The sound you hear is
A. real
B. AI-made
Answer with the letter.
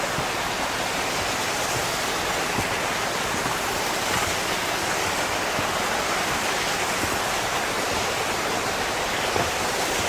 A